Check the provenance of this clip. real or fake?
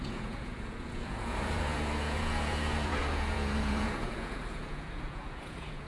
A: fake